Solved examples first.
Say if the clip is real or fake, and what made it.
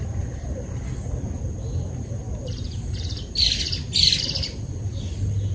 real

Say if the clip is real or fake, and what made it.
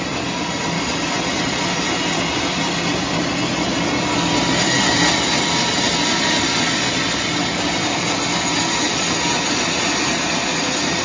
real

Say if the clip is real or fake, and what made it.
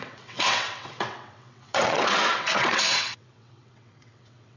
fake, vocoder, WaveNeXt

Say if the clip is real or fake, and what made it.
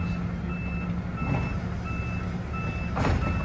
real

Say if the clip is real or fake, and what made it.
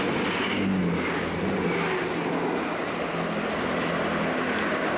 real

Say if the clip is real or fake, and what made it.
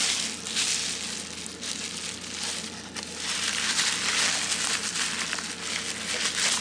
real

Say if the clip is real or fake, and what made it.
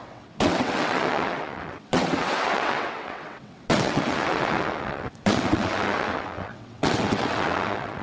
fake, vocoder, WaveNeXt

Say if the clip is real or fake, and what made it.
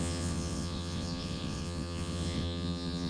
fake, vocoder, WaveNeXt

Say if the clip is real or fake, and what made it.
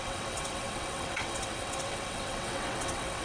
fake, vocoder, WaveNeXt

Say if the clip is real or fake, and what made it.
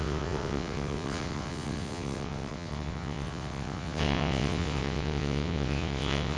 fake, vocoder, WaveNeXt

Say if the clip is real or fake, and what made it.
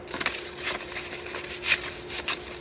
real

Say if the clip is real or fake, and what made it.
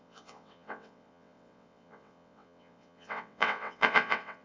fake, vocoder, WaveNeXt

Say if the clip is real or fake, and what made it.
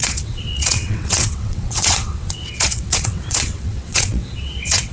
fake, vocoder, WaveNeXt